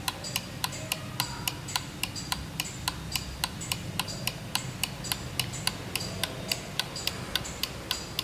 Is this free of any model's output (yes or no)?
yes